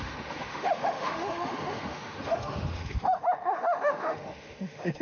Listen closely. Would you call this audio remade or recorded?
remade